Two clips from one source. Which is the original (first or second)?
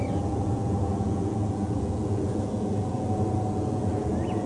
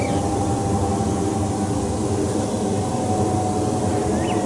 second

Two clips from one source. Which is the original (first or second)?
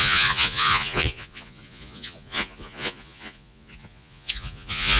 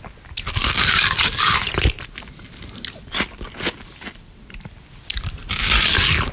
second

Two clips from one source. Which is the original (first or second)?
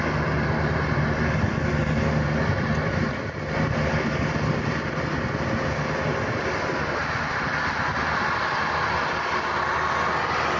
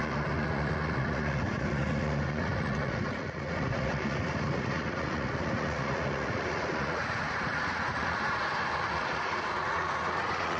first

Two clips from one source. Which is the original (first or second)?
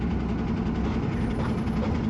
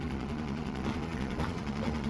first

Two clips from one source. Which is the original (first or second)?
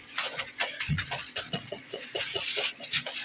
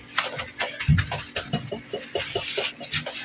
second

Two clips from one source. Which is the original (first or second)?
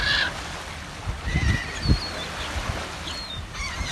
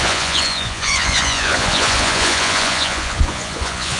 first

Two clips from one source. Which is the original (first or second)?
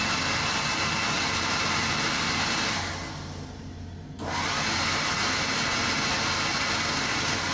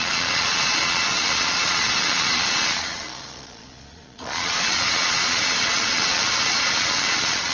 first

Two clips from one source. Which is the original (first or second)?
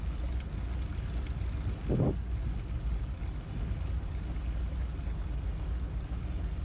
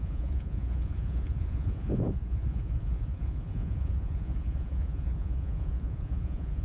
first